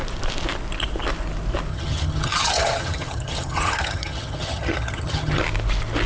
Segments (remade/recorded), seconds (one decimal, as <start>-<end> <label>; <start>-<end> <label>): 0.0-1.7 recorded; 1.7-5.4 remade; 5.4-6.1 recorded